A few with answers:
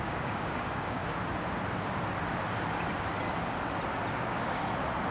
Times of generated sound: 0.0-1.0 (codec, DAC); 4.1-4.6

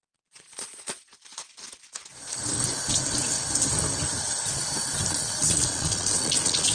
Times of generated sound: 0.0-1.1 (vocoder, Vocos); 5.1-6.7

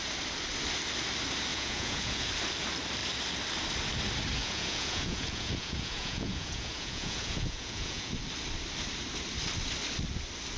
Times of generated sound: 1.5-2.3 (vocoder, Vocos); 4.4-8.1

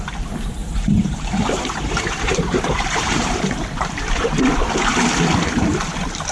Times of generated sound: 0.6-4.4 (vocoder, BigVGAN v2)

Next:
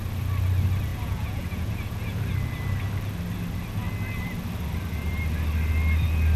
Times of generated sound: 0.9-2.2 (vocoder, Vocos)